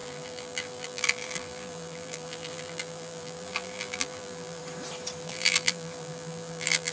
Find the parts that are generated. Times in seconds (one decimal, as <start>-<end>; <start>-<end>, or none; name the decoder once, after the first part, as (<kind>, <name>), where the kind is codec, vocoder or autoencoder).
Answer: 0.0-4.6 (vocoder, BigVGAN v2); 5.2-6.9

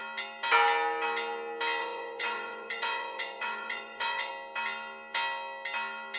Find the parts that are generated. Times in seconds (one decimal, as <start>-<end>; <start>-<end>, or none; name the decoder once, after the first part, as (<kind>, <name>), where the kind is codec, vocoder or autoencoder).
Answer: 1.8-4.3 (vocoder, Vocos)

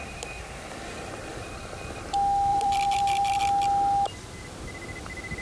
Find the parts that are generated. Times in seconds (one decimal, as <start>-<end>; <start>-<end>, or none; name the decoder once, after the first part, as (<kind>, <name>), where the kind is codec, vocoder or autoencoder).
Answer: 1.3-2.0 (vocoder, BigVGAN v2); 2.5-3.4

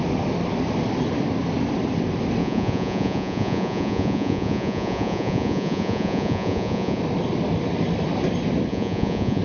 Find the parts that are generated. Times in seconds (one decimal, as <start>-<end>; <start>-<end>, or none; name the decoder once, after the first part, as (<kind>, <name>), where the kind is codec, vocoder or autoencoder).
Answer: 2.4-7.0 (vocoder, Vocos); 8.7-9.4

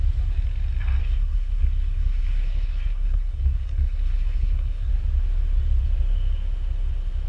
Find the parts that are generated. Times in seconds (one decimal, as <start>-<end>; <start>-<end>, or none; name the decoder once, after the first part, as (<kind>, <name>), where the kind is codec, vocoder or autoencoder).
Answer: 1.0-4.9 (codec, SNAC)